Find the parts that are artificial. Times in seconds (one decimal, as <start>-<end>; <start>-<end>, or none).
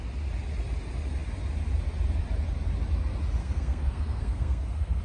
3.4-5.0